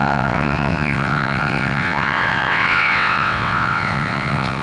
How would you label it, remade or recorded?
remade